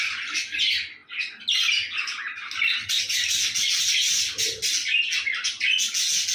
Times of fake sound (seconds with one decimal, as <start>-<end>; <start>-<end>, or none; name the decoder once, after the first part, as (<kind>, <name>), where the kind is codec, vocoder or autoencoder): none